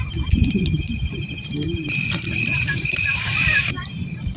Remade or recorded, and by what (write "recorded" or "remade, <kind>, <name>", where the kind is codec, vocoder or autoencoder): remade, vocoder, BigVGAN v2